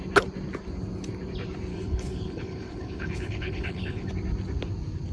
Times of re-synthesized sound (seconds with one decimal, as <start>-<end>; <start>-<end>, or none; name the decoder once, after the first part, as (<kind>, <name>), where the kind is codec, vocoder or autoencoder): 1.7-4.1 (codec, HILCodec)